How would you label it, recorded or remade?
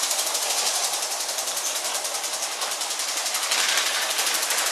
recorded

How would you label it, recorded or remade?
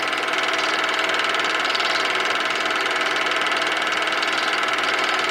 recorded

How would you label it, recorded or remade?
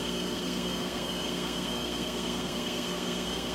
remade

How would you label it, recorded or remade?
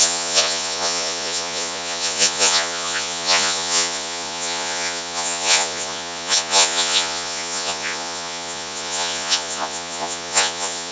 remade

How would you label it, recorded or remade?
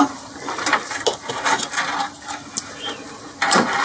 recorded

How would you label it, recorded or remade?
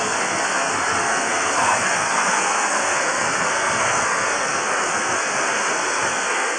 remade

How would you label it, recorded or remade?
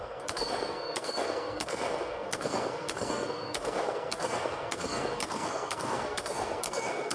remade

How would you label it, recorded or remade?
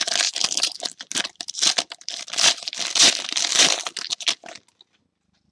recorded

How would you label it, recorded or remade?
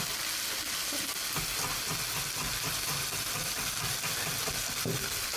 recorded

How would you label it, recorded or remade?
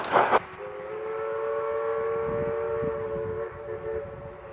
recorded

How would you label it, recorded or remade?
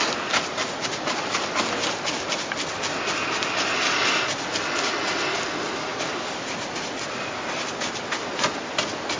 recorded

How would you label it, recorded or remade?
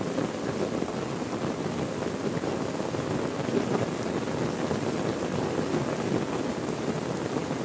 recorded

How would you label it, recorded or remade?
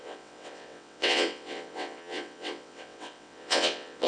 remade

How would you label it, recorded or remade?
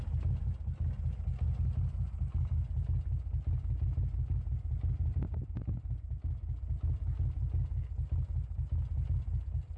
recorded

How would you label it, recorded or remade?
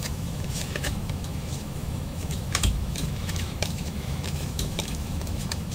remade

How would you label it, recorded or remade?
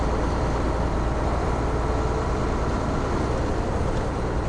recorded